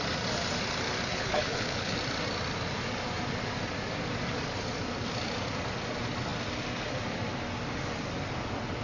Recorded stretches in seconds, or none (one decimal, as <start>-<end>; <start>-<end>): 0.0-1.1; 2.0-8.8